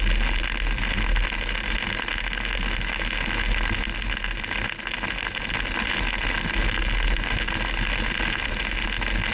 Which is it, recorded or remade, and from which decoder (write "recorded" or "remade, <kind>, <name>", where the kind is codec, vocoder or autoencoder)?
recorded